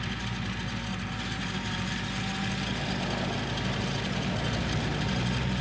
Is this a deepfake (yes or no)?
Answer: no